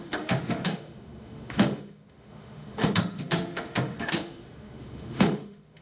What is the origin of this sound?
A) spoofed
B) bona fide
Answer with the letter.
A